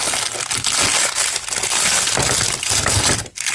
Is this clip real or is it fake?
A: real